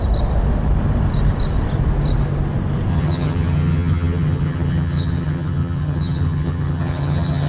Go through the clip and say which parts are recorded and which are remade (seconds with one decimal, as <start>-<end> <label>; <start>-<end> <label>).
0.0-2.9 recorded; 2.9-7.5 remade